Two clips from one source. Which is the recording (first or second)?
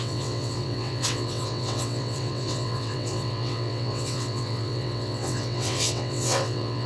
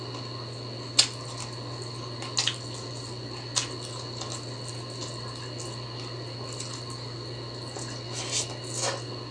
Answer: second